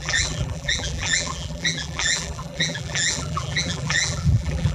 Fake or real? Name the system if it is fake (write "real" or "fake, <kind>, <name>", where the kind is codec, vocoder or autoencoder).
fake, vocoder, BigVGAN v2